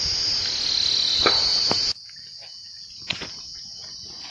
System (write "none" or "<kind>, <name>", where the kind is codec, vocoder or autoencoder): none